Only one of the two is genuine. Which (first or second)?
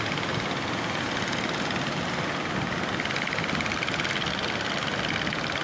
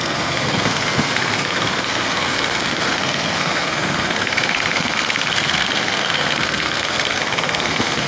first